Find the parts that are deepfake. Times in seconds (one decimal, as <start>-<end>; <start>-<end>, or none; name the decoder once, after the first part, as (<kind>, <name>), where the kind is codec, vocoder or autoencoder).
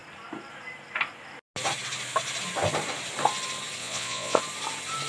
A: 3.8-4.4 (vocoder, Vocos)